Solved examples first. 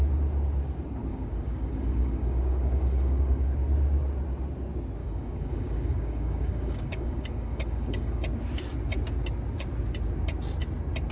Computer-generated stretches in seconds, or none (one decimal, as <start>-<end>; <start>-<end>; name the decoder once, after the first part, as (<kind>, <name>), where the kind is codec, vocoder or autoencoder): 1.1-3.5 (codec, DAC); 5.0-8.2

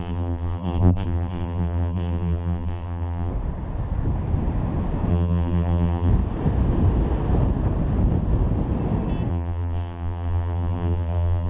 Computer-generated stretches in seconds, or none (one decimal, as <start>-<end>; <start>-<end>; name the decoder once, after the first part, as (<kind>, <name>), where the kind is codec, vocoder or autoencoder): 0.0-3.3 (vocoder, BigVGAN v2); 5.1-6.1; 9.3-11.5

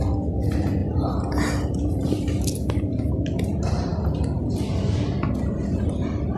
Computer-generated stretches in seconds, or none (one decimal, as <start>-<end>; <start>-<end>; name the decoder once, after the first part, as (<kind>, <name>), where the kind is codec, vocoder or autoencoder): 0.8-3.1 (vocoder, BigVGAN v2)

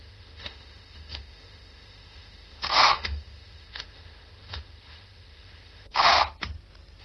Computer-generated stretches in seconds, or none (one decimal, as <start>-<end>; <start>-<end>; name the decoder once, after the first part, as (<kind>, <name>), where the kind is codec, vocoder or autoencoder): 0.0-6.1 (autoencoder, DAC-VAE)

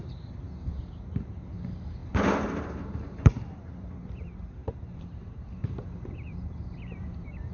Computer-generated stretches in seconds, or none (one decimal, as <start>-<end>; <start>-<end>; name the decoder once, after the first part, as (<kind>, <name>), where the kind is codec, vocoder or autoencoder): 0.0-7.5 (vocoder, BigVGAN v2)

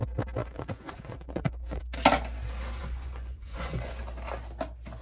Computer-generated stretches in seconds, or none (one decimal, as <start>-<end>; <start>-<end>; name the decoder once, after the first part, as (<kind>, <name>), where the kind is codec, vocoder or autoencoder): 0.4-1.8 (vocoder, Vocos); 2.8-4.0

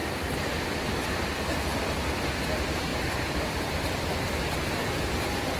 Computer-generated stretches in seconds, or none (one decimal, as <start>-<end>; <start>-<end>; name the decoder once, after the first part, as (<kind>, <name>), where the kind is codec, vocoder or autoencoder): 0.0-1.0 (vocoder, BigVGAN v2); 2.9-4.9